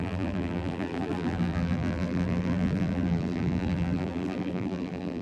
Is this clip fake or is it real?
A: fake